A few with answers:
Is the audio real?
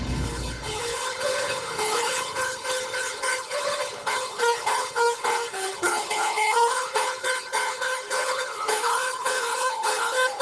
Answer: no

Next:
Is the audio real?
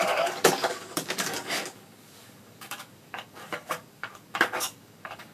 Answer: no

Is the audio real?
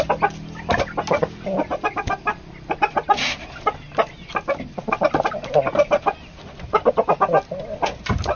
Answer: yes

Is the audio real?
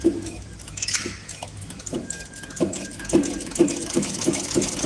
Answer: no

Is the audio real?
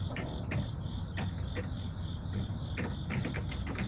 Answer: no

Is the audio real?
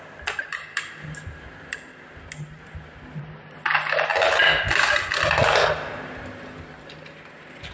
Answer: yes